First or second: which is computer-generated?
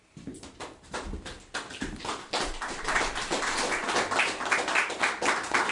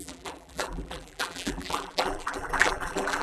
second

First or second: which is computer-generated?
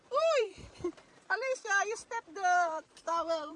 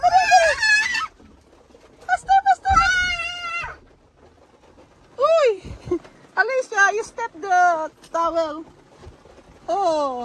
first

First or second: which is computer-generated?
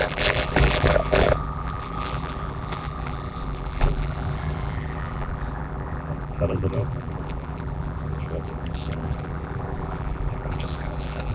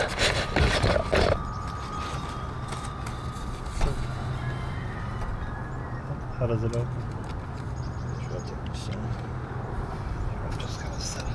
first